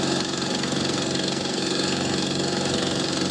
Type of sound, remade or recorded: remade